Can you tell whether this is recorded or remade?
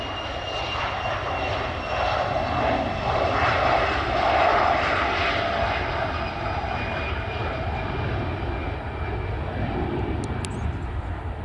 recorded